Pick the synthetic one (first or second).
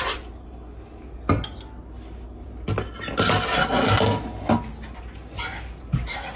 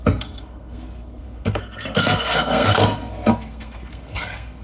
second